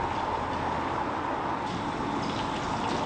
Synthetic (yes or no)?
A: no